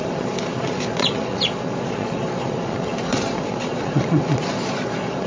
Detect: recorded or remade remade